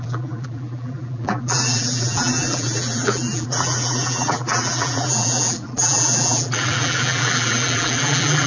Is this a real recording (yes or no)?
no